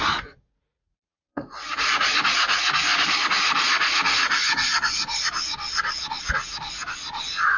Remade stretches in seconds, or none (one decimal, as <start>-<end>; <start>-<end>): 0.0-2.9; 6.2-6.8